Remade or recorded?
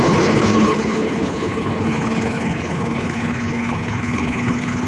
remade